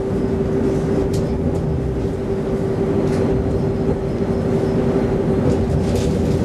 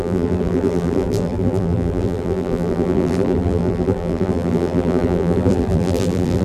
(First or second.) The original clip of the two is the first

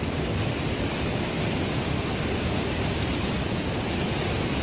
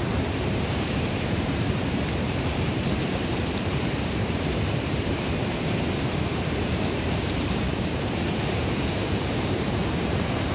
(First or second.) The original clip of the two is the first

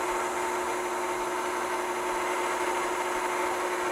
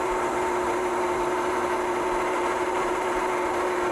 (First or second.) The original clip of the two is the first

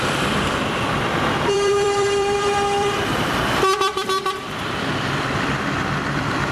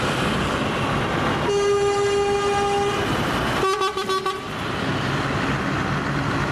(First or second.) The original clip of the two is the second